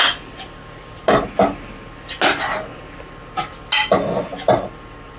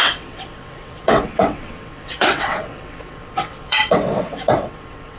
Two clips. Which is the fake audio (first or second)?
second